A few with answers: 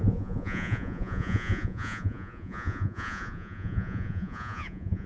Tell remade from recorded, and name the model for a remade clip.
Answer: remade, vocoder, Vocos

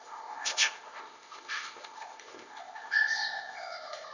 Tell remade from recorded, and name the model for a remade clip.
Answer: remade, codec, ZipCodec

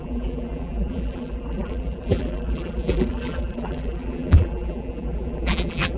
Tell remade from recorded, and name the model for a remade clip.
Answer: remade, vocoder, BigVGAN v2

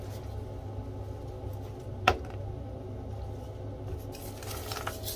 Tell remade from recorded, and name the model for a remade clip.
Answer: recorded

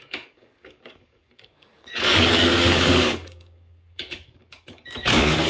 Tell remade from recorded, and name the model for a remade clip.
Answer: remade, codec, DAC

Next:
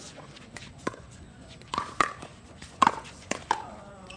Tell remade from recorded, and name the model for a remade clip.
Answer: remade, vocoder, Vocos